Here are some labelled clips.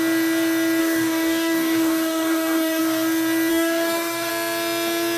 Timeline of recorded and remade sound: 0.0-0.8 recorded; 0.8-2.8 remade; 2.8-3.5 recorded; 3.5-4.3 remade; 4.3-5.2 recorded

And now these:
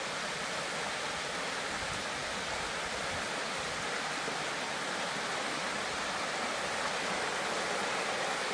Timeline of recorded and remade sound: 0.0-8.5 recorded

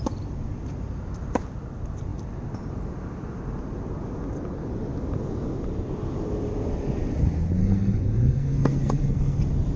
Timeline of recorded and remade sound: 0.0-7.6 recorded; 7.6-9.4 remade; 9.4-9.8 recorded